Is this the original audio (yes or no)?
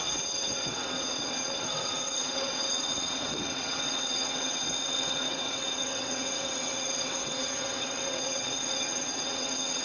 no